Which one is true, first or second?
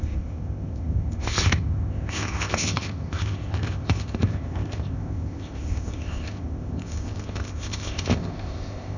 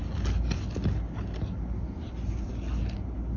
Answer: second